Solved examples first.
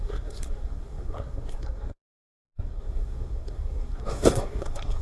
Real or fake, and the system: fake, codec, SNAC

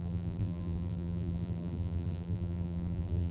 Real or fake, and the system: fake, vocoder, BigVGAN v2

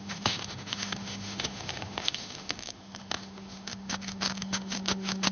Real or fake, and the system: fake, autoencoder, DAC-VAE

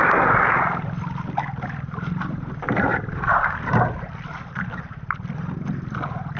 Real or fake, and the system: real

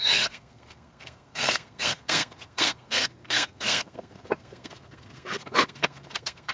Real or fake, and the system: fake, codec, SNAC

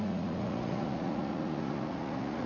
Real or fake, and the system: fake, vocoder, Vocos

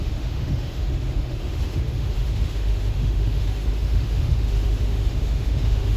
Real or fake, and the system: fake, autoencoder, DAC-VAE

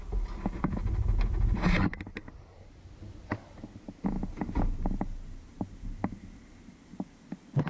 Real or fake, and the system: real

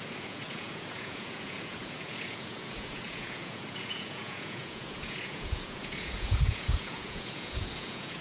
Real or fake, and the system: fake, vocoder, Vocos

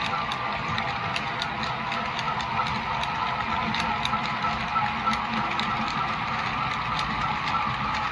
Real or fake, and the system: real